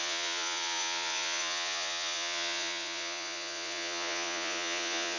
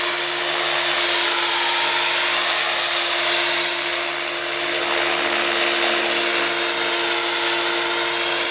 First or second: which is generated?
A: first